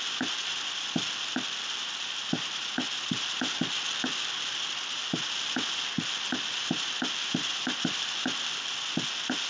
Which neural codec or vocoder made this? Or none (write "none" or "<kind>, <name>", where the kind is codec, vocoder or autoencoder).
none